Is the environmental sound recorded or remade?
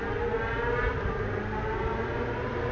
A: recorded